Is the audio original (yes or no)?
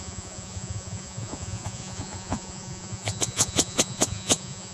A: no